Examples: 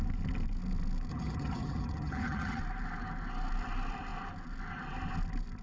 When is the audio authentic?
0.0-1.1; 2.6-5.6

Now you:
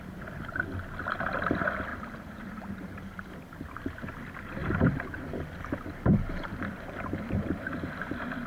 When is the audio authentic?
0.0-1.9; 3.3-4.6; 8.1-8.5

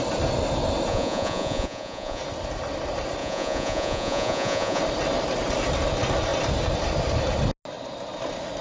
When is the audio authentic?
0.0-0.9; 2.2-3.2; 4.8-8.6

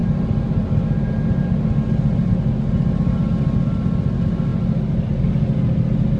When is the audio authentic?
0.0-6.2